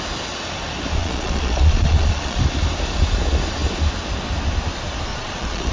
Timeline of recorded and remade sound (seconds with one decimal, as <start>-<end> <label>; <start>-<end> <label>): 0.0-1.0 recorded; 1.0-2.4 remade; 2.4-5.1 recorded; 5.1-5.7 remade